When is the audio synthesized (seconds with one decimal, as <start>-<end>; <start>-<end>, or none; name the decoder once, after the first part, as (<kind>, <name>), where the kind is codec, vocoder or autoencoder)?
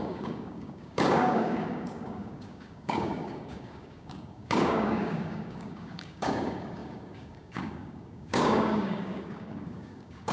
0.0-10.3 (codec, DAC)